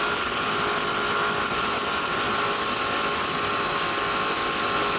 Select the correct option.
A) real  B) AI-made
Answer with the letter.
A